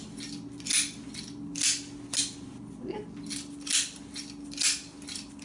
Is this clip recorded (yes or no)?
yes